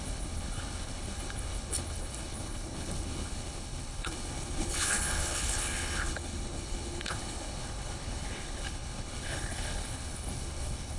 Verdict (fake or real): fake